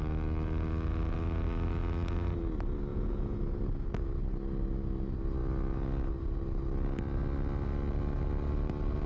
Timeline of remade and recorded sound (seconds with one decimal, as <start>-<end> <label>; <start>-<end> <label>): 0.0-2.9 recorded; 2.9-3.6 remade; 3.6-9.1 recorded